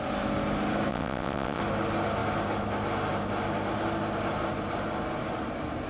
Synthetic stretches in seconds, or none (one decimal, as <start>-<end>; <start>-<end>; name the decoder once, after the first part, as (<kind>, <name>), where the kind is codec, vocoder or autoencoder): 0.9-1.6 (vocoder, WaveNeXt)